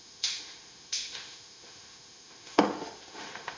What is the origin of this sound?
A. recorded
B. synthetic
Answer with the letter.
B